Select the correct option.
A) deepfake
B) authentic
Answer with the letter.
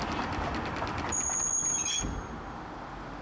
B